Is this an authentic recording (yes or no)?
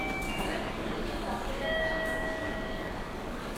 no